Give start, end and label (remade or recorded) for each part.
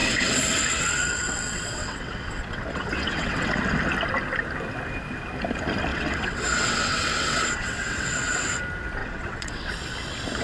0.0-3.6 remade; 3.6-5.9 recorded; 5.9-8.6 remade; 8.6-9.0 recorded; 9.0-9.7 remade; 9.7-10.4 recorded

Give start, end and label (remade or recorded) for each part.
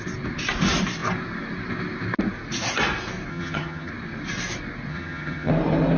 0.0-3.3 recorded; 3.3-3.9 remade; 3.9-4.9 recorded; 4.9-5.5 remade; 5.5-6.0 recorded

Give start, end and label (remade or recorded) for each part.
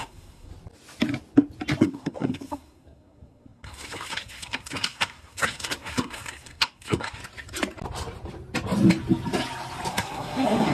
0.0-0.5 remade; 0.5-1.8 recorded; 1.8-7.2 remade; 7.2-9.9 recorded; 9.9-10.7 remade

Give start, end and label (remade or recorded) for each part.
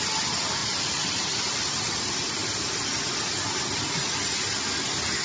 0.0-0.6 recorded; 0.6-2.3 remade; 2.3-5.2 recorded